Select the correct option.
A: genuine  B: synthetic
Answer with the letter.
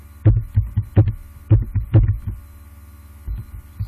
A